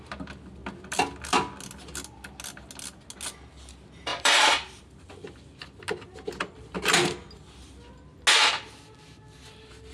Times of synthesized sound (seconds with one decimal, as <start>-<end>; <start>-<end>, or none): 4.1-4.8